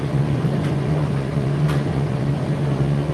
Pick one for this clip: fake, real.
fake